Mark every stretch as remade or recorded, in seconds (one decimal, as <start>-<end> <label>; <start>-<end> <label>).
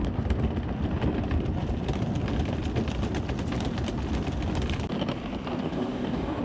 0.0-5.6 recorded; 5.6-6.4 remade